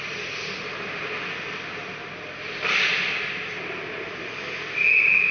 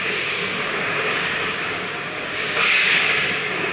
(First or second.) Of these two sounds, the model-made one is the second